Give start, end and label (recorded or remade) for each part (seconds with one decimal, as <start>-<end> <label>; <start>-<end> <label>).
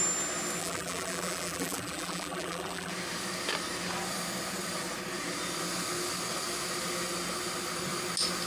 0.0-0.6 recorded; 0.6-2.9 remade; 2.9-8.5 recorded